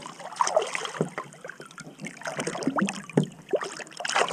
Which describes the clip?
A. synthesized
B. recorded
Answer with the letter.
B